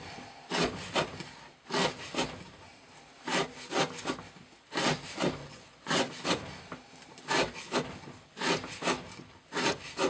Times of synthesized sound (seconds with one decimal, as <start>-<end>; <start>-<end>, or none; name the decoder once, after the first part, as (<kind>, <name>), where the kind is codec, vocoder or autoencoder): 5.4-6.1 (vocoder, Vocos)